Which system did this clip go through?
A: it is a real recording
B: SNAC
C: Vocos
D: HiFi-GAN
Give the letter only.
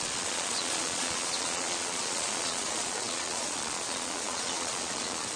C